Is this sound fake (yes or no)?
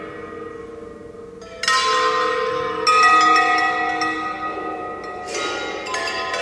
no